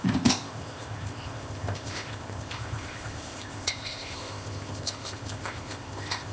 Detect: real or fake fake